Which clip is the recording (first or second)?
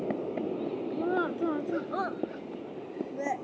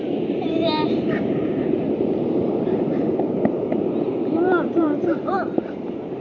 first